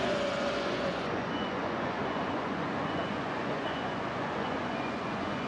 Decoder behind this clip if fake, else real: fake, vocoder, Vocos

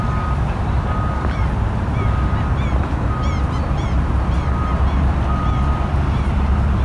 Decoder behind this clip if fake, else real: real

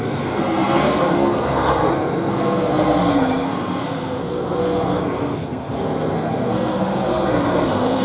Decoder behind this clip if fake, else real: fake, codec, SNAC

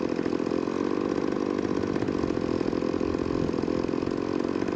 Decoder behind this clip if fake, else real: real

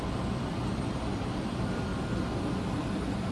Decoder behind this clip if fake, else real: real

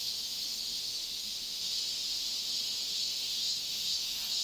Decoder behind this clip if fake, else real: fake, autoencoder, DAC-VAE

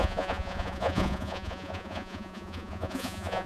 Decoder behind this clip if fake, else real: fake, vocoder, Vocos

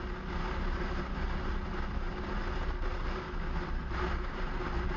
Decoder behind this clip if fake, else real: real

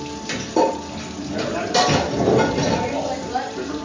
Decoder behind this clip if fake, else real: real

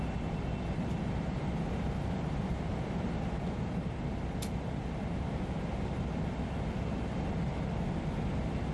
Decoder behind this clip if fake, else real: real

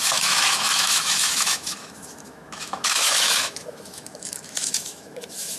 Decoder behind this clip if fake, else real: fake, autoencoder, DAC-VAE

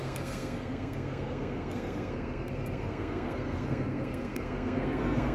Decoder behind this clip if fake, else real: fake, codec, SNAC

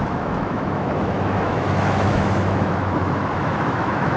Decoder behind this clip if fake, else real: fake, autoencoder, DAC-VAE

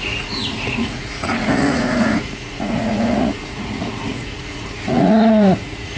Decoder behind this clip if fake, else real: fake, vocoder, Vocos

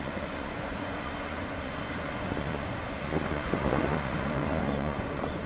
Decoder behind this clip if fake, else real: fake, vocoder, Vocos